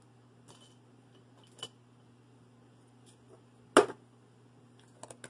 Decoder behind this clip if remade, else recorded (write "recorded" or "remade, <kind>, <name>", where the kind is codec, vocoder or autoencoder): recorded